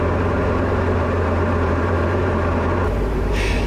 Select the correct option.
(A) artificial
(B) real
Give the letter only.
A